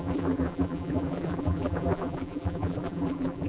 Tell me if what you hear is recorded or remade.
remade